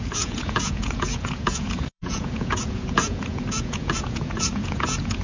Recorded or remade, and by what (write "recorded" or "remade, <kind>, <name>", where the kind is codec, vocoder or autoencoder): remade, vocoder, Vocos